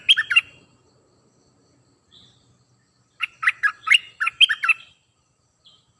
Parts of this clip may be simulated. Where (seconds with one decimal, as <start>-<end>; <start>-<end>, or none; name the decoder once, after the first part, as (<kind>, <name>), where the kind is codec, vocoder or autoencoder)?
3.2-5.6 (vocoder, BigVGAN v2)